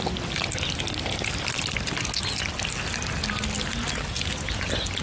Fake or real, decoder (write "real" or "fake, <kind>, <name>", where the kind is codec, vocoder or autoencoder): real